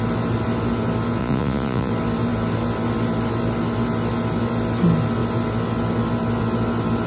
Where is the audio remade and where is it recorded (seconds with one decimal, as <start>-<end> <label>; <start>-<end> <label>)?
0.0-1.2 recorded; 1.2-1.9 remade; 1.9-7.1 recorded